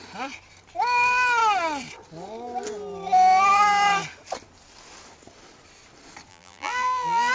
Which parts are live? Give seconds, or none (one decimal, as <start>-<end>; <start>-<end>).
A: 0.0-6.3